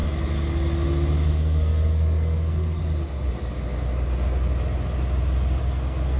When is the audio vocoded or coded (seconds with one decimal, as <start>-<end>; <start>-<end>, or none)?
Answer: 1.3-2.8; 5.6-6.2